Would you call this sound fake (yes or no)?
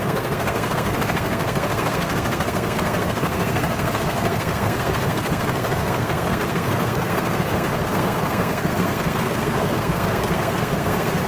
yes